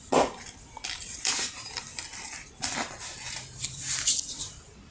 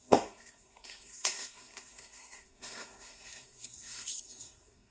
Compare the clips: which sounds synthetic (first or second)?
second